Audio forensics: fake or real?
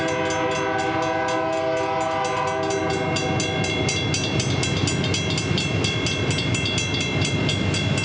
real